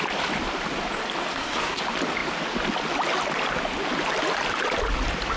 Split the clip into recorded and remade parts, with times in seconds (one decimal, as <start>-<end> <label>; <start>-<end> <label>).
0.0-1.3 recorded; 1.3-1.8 remade; 1.8-5.4 recorded